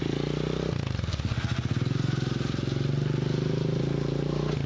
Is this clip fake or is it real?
real